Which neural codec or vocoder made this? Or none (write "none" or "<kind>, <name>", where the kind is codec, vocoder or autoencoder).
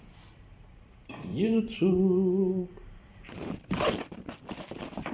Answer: vocoder, BigVGAN v2